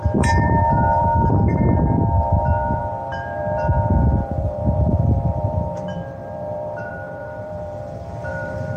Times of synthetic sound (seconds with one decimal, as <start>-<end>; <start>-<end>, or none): 0.0-8.8